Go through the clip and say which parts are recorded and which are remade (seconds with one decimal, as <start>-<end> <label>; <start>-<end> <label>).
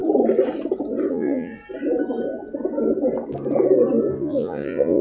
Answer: 0.0-1.1 recorded; 1.1-1.6 remade; 1.6-4.2 recorded; 4.2-5.0 remade